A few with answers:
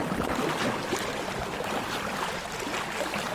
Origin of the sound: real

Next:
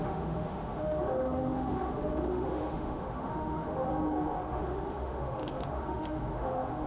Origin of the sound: fake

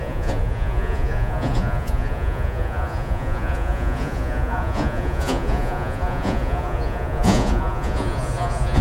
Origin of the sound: fake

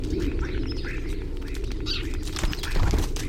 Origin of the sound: real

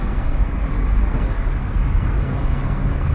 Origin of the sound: fake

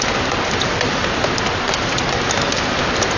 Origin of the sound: real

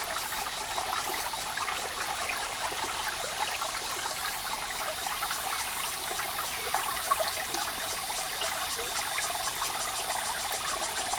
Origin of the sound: real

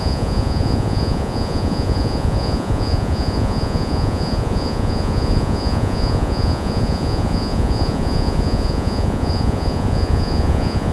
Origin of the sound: fake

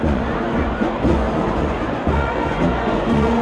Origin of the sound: fake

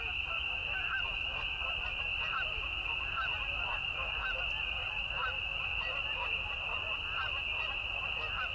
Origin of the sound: real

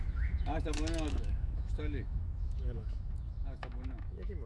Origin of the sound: fake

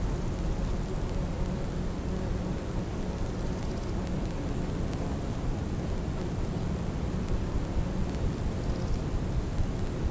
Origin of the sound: real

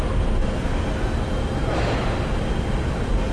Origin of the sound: real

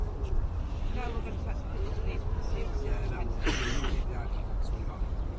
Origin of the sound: fake